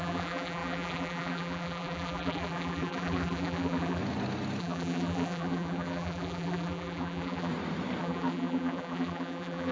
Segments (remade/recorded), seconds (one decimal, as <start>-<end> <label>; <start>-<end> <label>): 0.0-4.0 remade; 4.0-4.6 recorded; 4.6-7.5 remade; 7.5-8.0 recorded; 8.0-9.7 remade